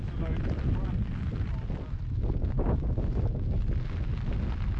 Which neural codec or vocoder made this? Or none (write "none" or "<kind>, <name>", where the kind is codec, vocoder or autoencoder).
none